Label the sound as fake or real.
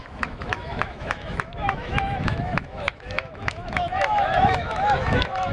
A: fake